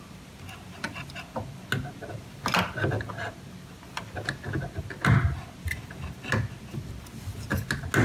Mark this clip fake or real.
real